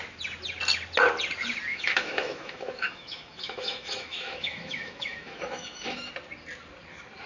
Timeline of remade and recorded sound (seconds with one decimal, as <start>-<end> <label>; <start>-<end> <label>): 0.0-1.7 recorded; 1.7-6.1 remade; 6.1-7.3 recorded